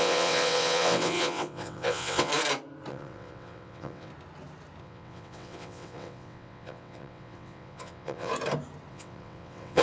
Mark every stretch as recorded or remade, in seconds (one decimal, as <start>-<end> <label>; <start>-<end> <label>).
0.0-2.3 remade; 2.3-2.9 recorded; 2.9-4.1 remade; 4.1-4.8 recorded; 4.8-8.3 remade; 8.3-8.9 recorded; 8.9-9.8 remade